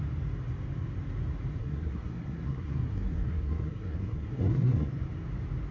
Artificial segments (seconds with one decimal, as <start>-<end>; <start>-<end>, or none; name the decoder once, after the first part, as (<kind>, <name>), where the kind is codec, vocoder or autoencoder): 1.6-5.0 (codec, SNAC)